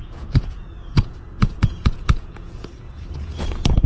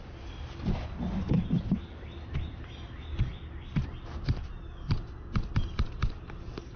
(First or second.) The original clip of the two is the second